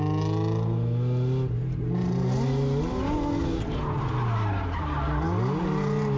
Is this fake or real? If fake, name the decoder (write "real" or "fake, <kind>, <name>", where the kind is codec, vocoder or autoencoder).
real